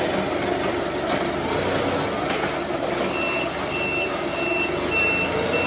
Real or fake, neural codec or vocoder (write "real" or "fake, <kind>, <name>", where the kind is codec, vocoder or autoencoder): real